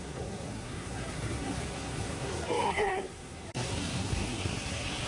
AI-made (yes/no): yes